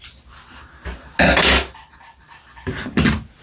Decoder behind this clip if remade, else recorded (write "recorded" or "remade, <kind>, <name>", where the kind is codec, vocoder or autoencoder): recorded